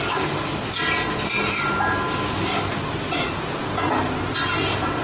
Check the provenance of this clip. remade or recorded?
recorded